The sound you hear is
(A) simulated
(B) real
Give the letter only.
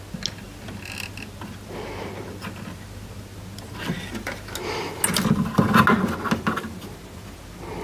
B